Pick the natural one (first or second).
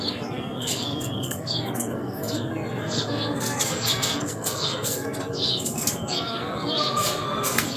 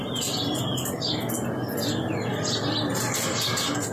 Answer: second